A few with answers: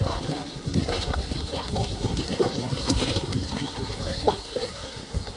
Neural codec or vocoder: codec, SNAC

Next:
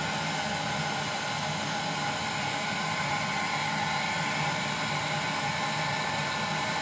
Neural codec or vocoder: none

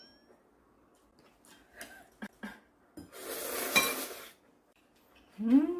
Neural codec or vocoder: none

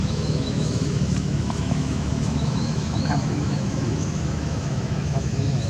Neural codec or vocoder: autoencoder, DAC-VAE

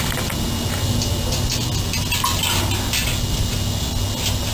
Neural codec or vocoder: none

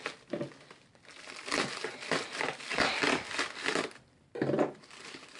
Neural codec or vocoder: none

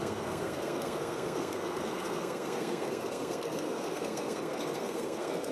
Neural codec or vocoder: codec, SNAC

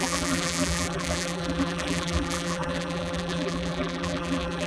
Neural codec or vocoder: vocoder, BigVGAN v2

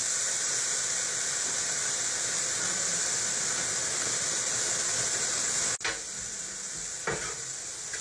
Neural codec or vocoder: none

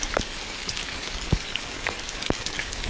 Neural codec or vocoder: codec, DAC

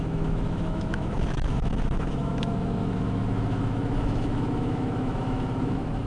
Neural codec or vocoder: autoencoder, DAC-VAE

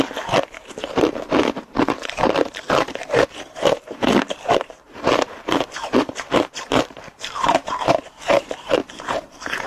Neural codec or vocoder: vocoder, BigVGAN v2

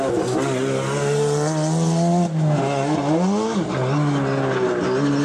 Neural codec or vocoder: none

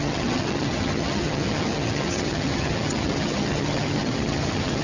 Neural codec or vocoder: vocoder, HiFi-GAN